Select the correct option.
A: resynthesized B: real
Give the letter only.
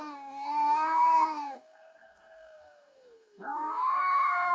A